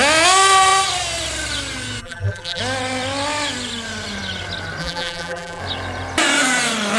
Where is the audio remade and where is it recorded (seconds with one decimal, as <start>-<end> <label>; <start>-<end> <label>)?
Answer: 0.0-2.0 recorded; 2.0-2.6 remade; 2.6-4.8 recorded; 4.8-5.6 remade; 5.6-7.0 recorded